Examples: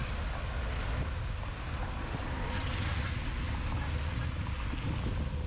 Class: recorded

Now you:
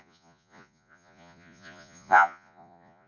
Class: remade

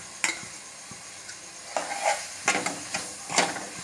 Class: recorded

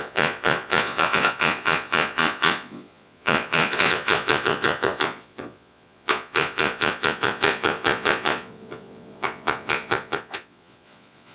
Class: remade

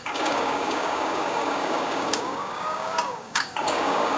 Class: remade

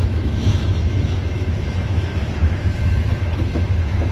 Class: remade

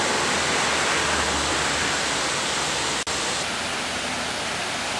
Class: recorded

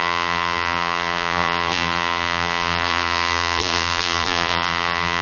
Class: remade